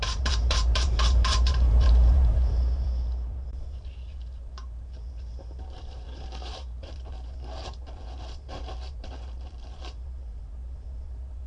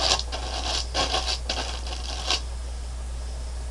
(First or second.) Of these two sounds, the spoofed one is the first